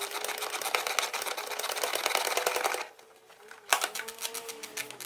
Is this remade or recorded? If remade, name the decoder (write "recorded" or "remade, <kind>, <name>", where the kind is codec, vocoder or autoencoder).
recorded